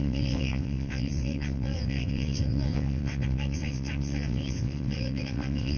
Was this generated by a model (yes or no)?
yes